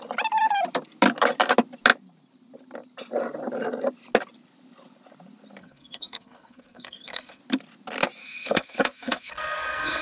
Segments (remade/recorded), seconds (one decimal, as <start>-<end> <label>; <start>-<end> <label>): 0.0-5.6 recorded; 5.6-7.4 remade; 7.4-8.2 recorded; 8.2-10.0 remade